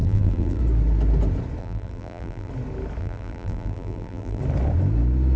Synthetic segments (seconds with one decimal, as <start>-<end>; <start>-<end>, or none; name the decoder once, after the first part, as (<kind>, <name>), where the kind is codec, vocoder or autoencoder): 0.0-0.6 (vocoder, BigVGAN v2); 1.6-2.5; 3.0-4.4